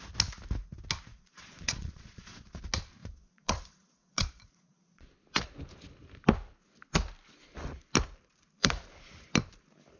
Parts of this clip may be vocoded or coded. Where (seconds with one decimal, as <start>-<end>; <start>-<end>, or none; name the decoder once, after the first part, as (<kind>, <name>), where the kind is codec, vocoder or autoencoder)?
1.1-2.6 (vocoder, Vocos); 3.0-5.1